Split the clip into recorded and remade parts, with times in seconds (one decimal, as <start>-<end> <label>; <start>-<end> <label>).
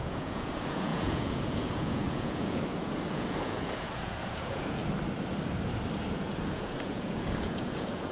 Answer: 0.0-4.8 remade; 4.8-6.0 recorded; 6.0-8.1 remade